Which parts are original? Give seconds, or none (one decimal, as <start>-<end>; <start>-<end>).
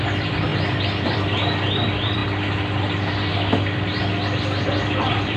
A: 2.2-3.3